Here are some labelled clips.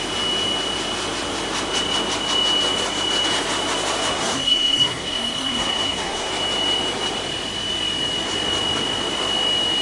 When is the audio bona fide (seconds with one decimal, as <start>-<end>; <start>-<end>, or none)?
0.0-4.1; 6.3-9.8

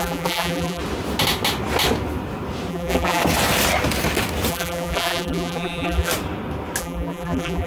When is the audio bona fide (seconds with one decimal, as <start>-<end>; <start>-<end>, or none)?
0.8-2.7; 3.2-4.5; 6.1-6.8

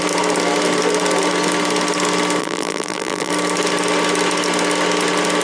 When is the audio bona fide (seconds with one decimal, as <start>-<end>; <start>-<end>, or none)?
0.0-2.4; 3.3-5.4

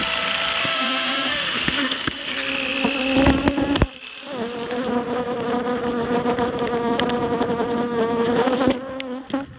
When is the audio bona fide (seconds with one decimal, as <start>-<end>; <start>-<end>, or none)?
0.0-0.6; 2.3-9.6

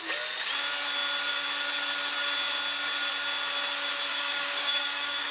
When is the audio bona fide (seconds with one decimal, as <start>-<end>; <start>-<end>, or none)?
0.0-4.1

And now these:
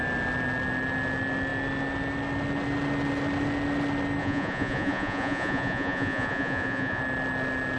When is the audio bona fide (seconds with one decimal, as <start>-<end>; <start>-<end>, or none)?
0.0-4.2; 7.0-7.8